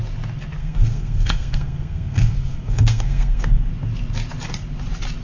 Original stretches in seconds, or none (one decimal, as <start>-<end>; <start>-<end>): 0.0-0.6; 3.7-5.2